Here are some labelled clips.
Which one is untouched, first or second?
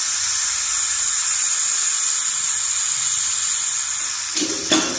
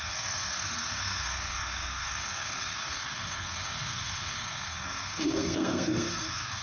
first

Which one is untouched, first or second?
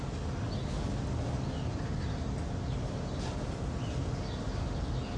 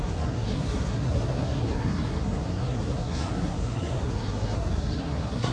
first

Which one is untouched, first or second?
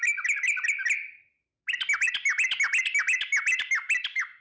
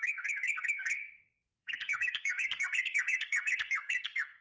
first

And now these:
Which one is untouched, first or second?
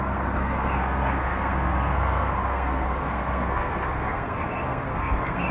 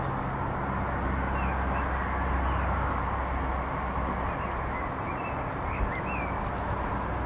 second